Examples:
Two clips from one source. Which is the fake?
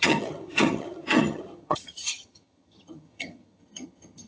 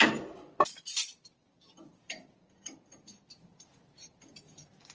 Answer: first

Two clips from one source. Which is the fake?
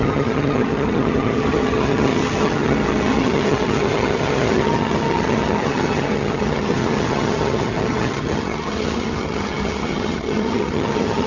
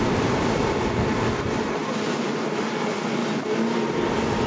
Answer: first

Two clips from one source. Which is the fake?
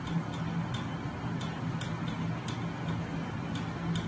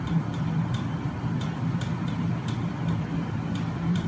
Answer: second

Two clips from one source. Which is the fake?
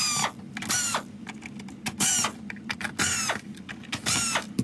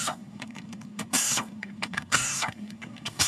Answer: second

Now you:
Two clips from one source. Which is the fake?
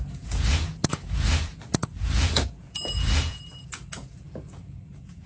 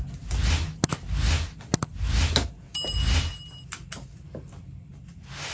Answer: first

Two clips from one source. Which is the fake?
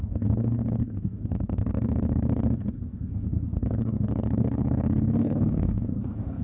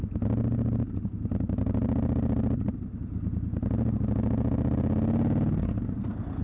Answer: first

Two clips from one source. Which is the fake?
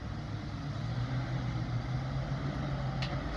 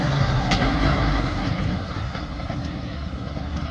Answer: second